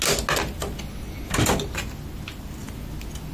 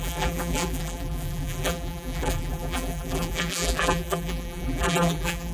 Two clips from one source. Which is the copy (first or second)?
second